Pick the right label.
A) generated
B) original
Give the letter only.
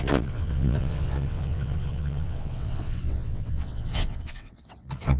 A